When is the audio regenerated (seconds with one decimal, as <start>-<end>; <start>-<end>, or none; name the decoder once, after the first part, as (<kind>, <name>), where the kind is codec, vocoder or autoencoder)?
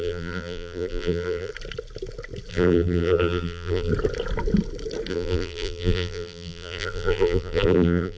0.0-1.5 (vocoder, BigVGAN v2); 2.5-3.9; 5.1-8.2